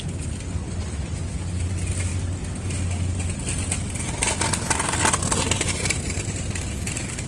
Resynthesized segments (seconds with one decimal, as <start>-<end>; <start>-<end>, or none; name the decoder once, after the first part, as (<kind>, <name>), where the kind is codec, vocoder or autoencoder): none